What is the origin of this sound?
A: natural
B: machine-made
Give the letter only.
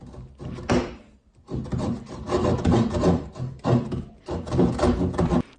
A